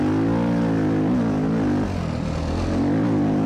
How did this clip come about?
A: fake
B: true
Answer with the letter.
B